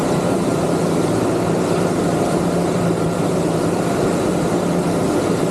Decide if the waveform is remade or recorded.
remade